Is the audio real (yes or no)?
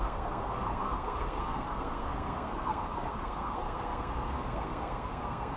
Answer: no